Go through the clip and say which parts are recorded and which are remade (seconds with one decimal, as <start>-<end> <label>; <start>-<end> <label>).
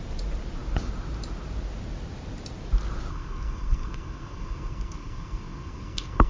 0.0-3.1 recorded; 3.1-6.3 remade